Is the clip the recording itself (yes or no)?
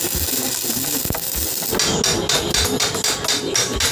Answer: yes